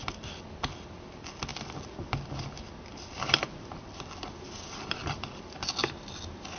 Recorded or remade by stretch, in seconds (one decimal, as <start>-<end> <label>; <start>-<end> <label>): 0.0-1.5 recorded; 1.5-4.3 remade; 4.3-5.0 recorded; 5.0-5.7 remade; 5.7-6.6 recorded